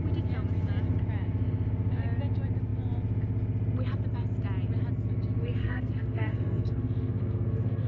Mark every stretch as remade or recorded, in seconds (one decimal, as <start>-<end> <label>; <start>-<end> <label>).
0.0-5.6 recorded; 5.6-7.9 remade